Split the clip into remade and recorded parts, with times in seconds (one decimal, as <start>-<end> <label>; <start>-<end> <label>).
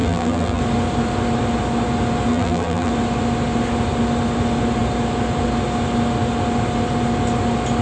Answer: 0.0-0.6 remade; 0.6-2.3 recorded; 2.3-2.9 remade; 2.9-7.8 recorded